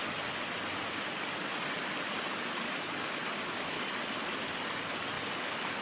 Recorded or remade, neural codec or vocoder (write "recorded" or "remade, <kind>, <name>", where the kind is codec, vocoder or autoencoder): recorded